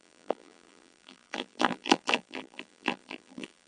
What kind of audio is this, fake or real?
fake